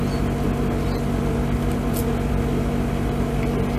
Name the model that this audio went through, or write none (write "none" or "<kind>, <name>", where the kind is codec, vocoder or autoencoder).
none